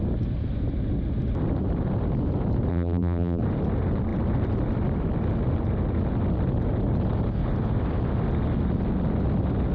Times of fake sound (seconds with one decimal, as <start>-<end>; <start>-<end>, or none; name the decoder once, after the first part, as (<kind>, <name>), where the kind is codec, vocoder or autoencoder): 2.7-3.4 (vocoder, BigVGAN v2)

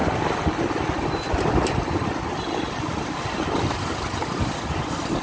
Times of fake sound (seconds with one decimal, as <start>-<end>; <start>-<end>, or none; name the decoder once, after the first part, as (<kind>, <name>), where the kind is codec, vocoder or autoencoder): 0.0-5.2 (vocoder, BigVGAN v2)

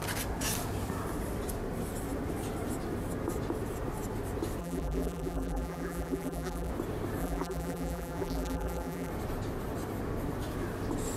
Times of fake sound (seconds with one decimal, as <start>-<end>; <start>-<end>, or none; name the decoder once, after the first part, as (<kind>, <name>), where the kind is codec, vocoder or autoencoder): 4.6-6.7 (vocoder, BigVGAN v2); 7.2-9.1

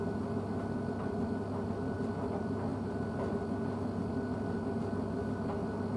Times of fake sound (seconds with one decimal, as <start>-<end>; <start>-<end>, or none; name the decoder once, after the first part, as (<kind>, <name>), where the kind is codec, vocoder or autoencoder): none

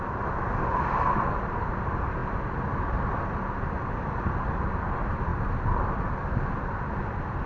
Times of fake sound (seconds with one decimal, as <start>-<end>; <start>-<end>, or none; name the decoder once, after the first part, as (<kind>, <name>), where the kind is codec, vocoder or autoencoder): none

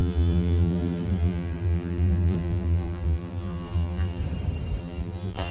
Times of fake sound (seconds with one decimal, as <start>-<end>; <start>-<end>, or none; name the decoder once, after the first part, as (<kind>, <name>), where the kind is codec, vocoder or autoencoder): 0.0-4.2 (vocoder, BigVGAN v2); 4.8-5.5

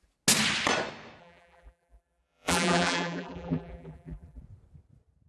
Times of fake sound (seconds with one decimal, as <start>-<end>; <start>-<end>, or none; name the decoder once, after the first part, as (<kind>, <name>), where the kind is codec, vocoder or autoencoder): 1.2-4.4 (vocoder, BigVGAN v2)